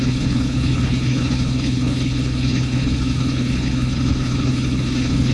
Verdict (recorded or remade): remade